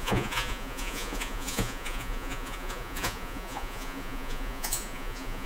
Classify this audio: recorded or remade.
remade